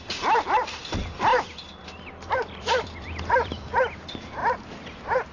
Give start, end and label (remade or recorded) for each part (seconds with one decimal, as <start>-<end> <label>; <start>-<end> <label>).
0.0-5.3 remade

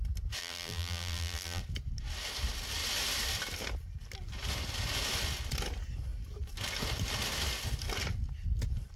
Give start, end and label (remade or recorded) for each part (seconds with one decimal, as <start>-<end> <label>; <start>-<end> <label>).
0.0-0.4 recorded; 0.4-1.6 remade; 1.6-9.0 recorded

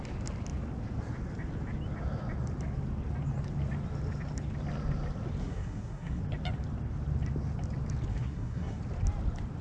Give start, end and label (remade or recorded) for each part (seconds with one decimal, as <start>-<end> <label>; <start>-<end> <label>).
0.0-5.4 recorded; 5.4-6.2 remade; 6.2-8.1 recorded; 8.1-8.8 remade; 8.8-9.6 recorded

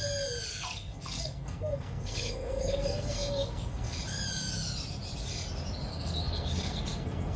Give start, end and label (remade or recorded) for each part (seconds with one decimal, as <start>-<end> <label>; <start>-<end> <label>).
0.0-0.5 recorded; 0.5-4.0 remade; 4.0-5.9 recorded; 5.9-7.4 remade